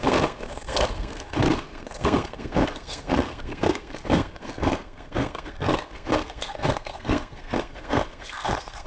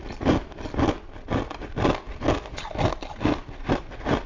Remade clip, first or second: first